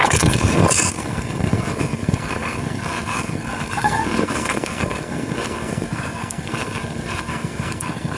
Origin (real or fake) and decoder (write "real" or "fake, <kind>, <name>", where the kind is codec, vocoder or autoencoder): fake, codec, SNAC